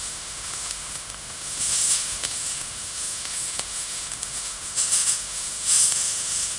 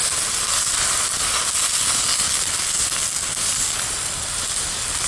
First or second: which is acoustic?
second